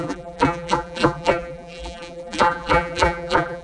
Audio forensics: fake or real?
fake